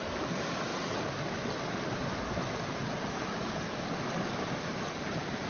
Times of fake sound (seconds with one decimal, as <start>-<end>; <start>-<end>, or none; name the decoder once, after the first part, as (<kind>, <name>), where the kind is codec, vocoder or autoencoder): none